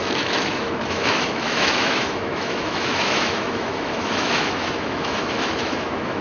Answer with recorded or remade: remade